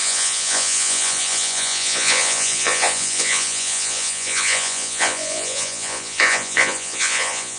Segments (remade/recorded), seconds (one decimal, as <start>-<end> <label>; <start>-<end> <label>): 0.0-7.6 remade